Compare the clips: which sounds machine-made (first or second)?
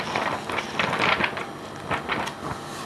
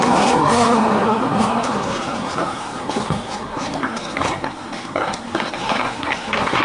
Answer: second